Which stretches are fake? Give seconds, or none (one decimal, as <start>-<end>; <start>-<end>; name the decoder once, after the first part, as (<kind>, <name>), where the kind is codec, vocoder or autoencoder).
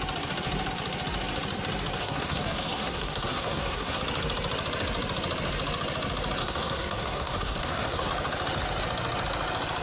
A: 2.0-4.0 (codec, SNAC); 6.4-8.1